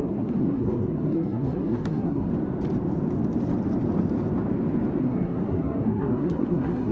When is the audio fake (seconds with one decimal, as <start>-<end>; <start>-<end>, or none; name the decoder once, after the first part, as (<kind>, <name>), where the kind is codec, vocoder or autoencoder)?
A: 0.0-2.3 (codec, SNAC); 5.0-6.9